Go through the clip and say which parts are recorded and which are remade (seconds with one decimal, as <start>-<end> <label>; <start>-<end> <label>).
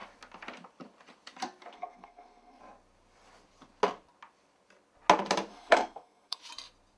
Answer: 0.0-1.7 recorded; 1.7-2.6 remade; 2.6-5.5 recorded; 5.5-6.4 remade; 6.4-7.0 recorded